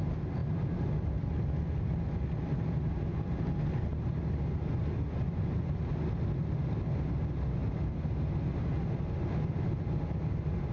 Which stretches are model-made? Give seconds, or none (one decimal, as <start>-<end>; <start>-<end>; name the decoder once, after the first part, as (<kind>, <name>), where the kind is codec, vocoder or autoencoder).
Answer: none

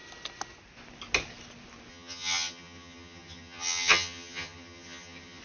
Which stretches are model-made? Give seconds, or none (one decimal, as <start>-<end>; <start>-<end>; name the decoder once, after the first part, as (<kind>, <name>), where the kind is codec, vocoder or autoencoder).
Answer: 1.9-5.4 (vocoder, HiFi-GAN)